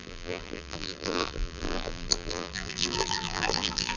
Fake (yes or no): yes